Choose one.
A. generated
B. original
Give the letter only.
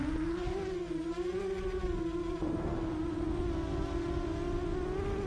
B